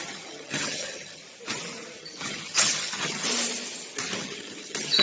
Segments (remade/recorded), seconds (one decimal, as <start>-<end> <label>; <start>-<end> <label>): 0.0-1.2 remade; 1.2-2.0 recorded; 2.0-3.2 remade; 3.2-4.2 recorded; 4.2-5.0 remade